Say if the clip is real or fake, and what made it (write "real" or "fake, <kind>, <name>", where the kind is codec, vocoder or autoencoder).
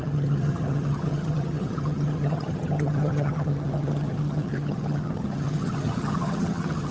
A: fake, vocoder, HiFi-GAN